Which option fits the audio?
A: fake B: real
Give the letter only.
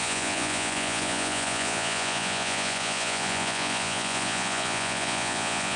A